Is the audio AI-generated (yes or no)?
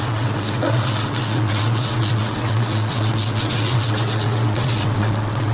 yes